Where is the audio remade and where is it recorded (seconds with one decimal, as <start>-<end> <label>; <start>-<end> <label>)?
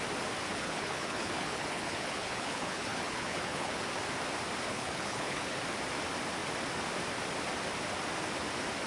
0.0-0.5 recorded; 0.5-3.8 remade; 3.8-4.7 recorded; 4.7-5.6 remade; 5.6-8.9 recorded